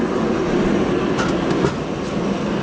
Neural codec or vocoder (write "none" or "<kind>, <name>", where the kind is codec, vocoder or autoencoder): none